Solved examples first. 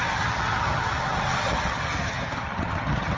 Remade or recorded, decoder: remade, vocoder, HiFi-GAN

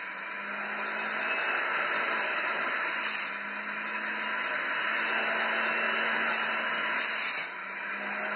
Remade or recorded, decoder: recorded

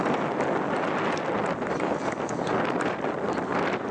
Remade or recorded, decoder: recorded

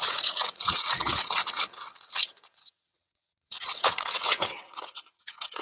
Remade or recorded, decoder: remade, vocoder, WaveNeXt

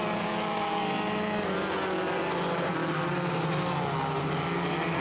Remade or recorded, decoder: recorded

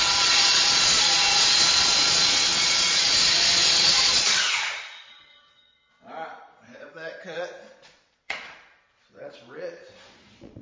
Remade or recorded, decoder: remade, vocoder, Vocos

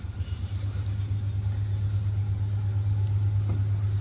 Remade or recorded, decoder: recorded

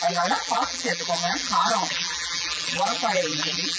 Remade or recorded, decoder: remade, vocoder, BigVGAN v2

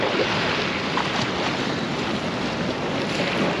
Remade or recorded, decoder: recorded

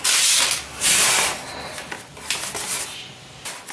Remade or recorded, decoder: recorded